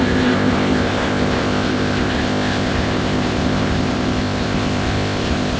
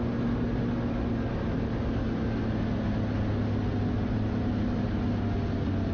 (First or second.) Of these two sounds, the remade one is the first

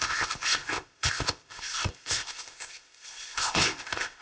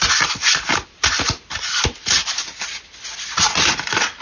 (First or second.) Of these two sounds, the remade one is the first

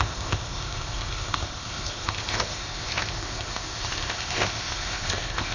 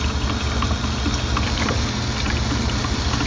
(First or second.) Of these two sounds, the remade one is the first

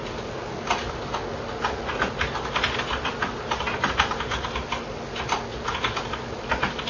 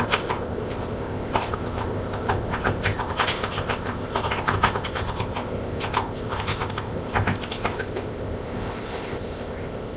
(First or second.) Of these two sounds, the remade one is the second